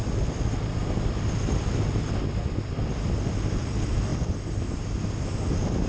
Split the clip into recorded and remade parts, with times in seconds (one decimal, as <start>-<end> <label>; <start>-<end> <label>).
0.0-5.9 remade